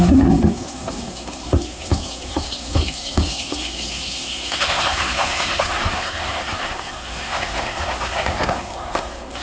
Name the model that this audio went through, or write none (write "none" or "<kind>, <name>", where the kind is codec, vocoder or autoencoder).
codec, SNAC